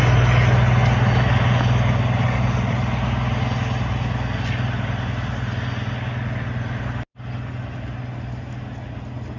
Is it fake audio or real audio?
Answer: real